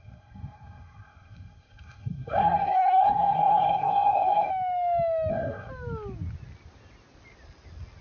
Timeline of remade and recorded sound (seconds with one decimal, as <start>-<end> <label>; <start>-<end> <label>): 0.0-4.5 remade; 4.5-5.3 recorded; 5.3-5.7 remade; 5.7-8.0 recorded